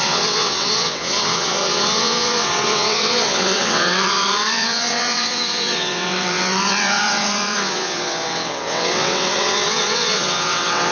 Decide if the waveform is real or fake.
fake